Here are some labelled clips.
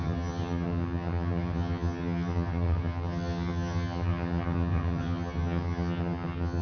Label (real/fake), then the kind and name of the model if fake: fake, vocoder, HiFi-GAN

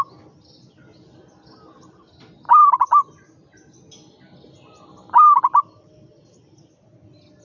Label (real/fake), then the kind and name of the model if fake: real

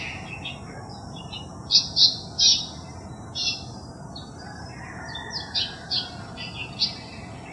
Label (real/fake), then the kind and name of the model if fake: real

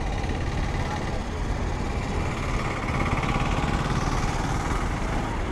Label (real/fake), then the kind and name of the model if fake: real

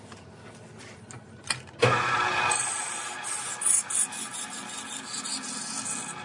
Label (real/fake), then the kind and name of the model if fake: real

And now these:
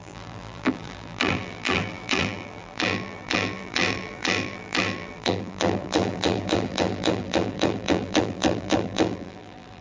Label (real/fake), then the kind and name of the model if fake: fake, vocoder, BigVGAN v2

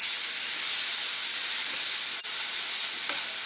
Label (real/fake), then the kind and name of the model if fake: real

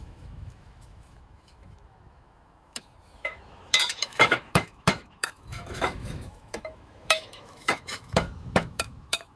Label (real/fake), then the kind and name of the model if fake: fake, autoencoder, DAC-VAE